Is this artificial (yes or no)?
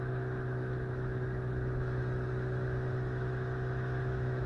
yes